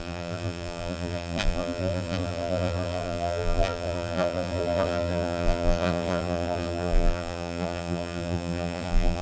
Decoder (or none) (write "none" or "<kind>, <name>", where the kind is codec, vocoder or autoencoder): vocoder, BigVGAN v2